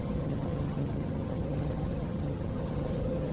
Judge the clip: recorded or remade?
remade